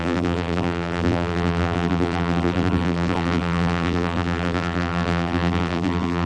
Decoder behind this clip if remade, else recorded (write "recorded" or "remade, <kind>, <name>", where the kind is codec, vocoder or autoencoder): remade, vocoder, BigVGAN v2